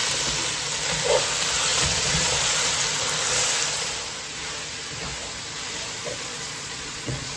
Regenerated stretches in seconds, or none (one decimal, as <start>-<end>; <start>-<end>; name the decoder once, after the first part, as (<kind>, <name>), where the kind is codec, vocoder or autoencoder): 1.7-2.8 (vocoder, Vocos); 6.0-7.4